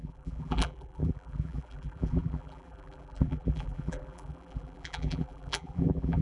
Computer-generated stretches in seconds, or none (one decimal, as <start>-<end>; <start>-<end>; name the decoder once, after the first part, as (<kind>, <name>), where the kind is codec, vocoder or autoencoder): 0.0-6.2 (vocoder, BigVGAN v2)